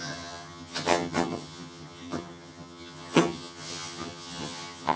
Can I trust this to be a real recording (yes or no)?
no